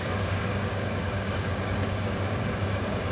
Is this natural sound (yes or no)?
no